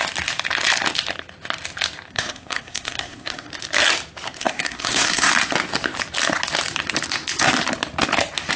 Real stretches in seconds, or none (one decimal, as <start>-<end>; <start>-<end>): 0.0-2.1; 3.5-4.4; 5.3-8.6